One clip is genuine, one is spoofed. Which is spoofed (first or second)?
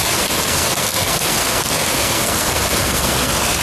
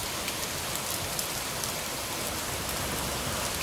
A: first